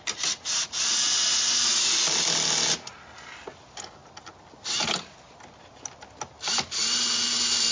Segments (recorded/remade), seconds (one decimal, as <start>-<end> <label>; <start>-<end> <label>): 0.0-7.7 recorded